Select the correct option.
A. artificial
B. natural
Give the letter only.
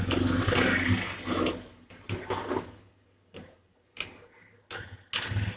B